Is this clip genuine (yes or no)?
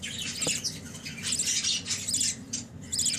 yes